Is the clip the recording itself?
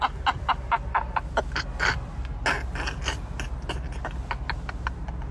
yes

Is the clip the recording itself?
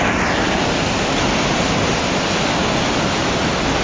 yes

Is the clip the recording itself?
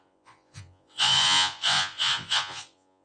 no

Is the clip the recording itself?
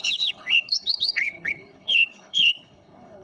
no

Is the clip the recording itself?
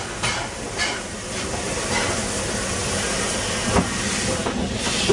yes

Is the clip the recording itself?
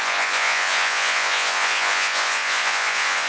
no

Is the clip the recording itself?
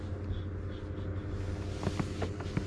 yes